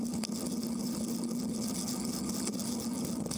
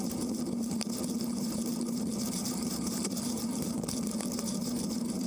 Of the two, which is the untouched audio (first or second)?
first